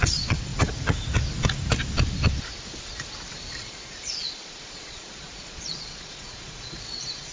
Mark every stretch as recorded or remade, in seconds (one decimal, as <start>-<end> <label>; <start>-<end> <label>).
0.0-0.5 remade; 0.5-3.6 recorded; 3.6-7.3 remade